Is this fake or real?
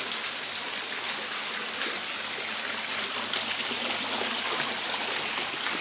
real